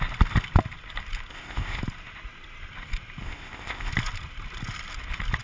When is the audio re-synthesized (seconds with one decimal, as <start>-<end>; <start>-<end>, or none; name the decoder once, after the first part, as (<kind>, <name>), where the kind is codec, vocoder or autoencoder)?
1.3-1.8 (codec, ZipCodec); 3.2-3.9